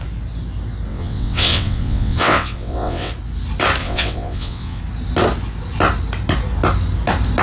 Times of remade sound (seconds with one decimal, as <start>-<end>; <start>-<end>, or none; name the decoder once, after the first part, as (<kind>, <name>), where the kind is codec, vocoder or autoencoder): 0.9-3.1 (vocoder, WaveNeXt); 3.8-4.8